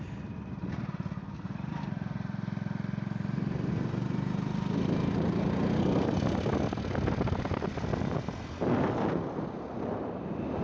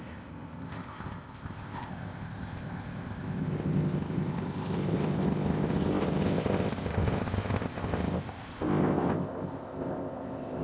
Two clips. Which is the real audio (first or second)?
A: first